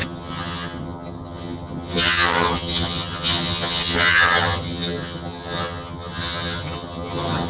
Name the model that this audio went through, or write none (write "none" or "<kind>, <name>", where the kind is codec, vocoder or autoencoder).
vocoder, HiFi-GAN